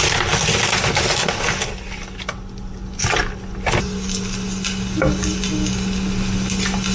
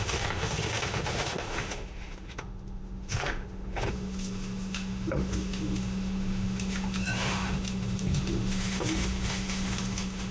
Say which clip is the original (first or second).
first